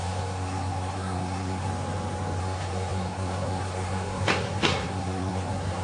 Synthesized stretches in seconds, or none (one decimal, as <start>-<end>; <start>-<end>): 0.0-1.7; 2.4-5.8